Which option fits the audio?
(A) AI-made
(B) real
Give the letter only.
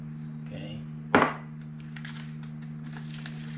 B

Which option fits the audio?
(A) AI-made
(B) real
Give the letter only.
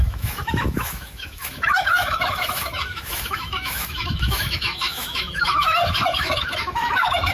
A